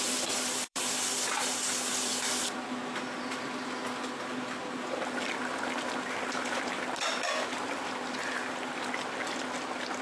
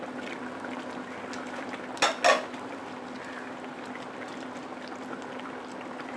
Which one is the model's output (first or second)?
first